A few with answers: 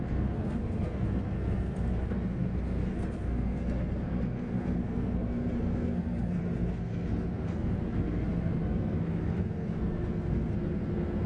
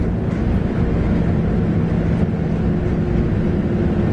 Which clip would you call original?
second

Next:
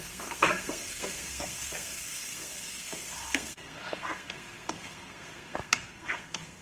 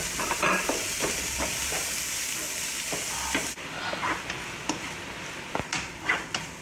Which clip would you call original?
second